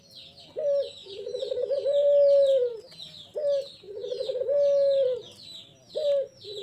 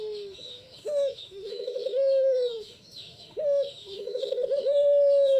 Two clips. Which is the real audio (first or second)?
first